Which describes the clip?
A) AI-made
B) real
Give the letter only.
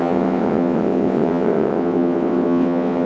A